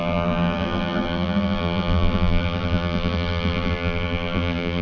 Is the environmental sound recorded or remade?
remade